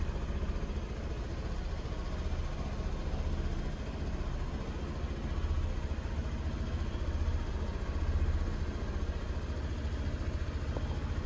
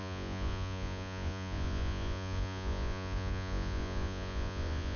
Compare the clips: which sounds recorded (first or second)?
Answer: first